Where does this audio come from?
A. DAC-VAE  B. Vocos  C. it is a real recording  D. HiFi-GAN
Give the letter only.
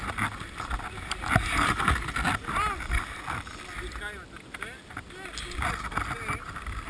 C